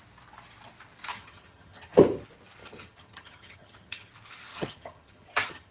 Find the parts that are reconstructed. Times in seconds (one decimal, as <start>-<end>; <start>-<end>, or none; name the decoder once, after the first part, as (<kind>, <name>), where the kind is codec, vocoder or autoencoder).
1.1-1.9 (vocoder, HiFi-GAN); 2.6-4.1; 4.5-5.7